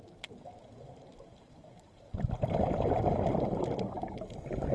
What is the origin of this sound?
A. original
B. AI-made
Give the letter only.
A